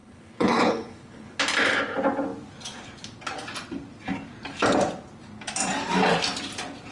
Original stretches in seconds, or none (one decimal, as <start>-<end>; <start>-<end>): 1.4-6.9